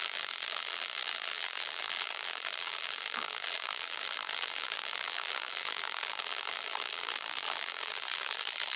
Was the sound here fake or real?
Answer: fake